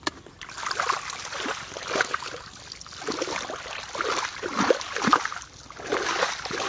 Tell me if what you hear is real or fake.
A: real